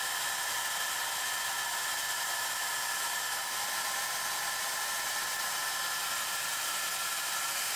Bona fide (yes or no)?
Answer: yes